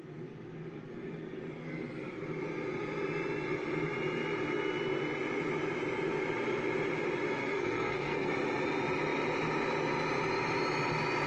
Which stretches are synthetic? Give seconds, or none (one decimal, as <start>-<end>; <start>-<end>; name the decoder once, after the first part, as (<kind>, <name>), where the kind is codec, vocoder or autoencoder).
7.4-8.3 (codec, SNAC)